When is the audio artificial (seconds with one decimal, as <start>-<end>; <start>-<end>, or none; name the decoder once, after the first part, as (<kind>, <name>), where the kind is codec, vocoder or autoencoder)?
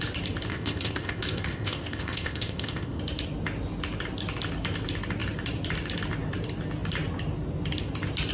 0.5-3.0 (codec, ZipCodec)